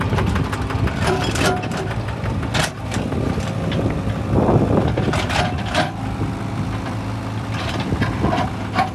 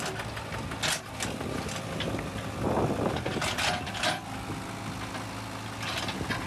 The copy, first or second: first